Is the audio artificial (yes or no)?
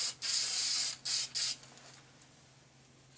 no